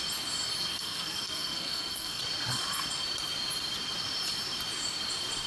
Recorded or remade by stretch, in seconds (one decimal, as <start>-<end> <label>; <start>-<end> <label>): 0.0-0.7 recorded; 0.7-2.2 remade; 2.2-5.5 recorded